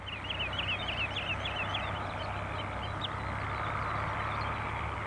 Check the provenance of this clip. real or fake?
real